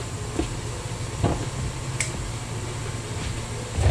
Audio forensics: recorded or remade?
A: recorded